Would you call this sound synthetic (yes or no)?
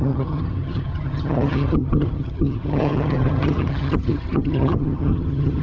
yes